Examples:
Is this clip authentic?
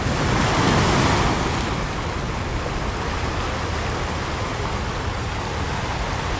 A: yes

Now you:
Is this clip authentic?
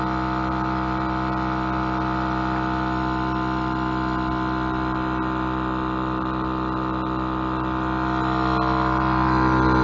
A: yes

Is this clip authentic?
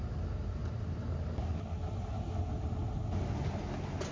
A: yes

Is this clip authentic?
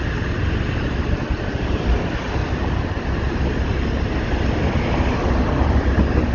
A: yes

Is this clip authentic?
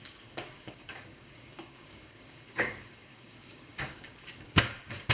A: no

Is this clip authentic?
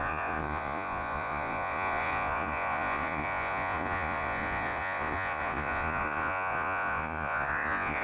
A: no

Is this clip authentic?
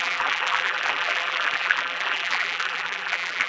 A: no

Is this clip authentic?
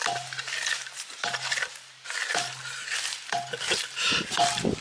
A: yes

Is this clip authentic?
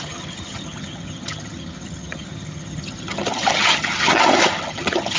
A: no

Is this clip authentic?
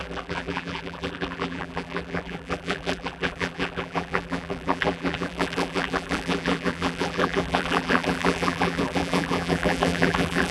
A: no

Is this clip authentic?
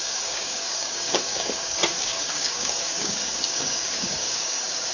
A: no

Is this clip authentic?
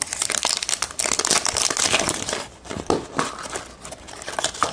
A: yes